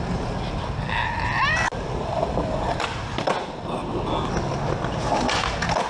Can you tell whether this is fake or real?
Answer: real